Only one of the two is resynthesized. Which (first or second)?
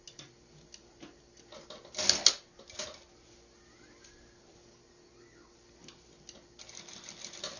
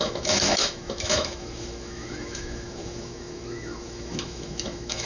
second